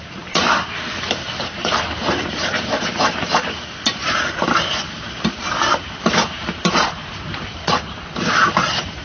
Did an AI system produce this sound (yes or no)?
yes